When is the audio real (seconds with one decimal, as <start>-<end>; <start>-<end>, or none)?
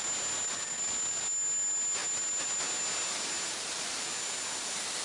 0.0-5.0